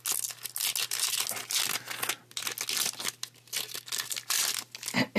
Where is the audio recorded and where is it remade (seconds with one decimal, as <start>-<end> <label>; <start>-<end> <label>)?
0.0-5.2 recorded